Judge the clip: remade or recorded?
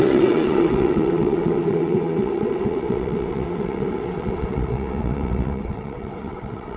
remade